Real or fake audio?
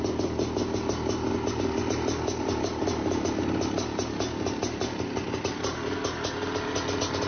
real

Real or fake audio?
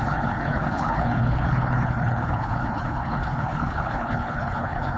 fake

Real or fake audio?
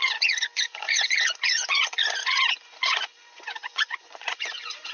fake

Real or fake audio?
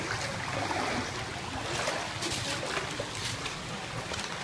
fake